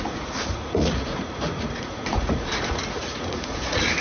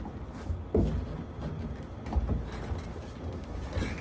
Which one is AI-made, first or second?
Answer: first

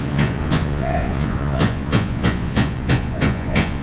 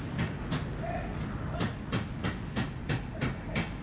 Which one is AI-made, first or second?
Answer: first